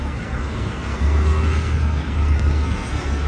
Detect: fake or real fake